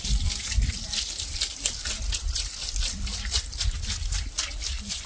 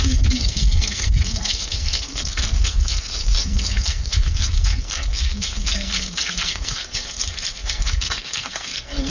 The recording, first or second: first